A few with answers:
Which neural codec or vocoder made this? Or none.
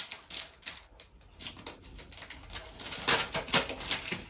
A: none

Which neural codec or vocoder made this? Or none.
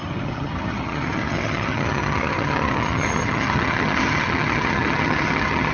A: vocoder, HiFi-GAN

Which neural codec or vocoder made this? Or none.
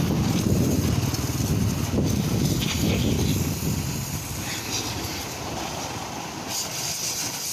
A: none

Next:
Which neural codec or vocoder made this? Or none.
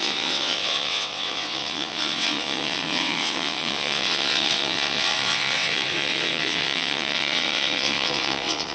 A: vocoder, WaveNeXt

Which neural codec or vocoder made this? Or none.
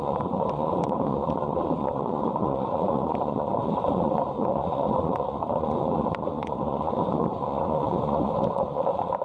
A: vocoder, Vocos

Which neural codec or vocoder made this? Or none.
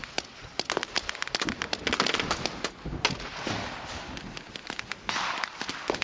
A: none